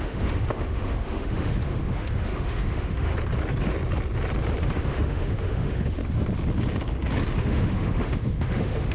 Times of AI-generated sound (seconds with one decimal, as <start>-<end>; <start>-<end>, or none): 0.0-3.1; 4.6-6.0; 7.4-8.9